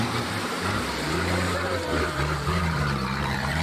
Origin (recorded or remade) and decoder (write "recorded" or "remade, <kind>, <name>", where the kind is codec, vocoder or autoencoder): remade, vocoder, BigVGAN v2